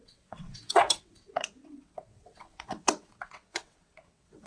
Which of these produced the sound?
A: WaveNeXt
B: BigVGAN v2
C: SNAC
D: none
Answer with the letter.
A